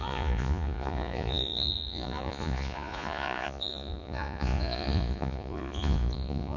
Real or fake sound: fake